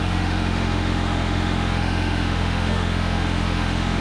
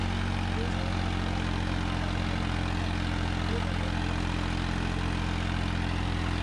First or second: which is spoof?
first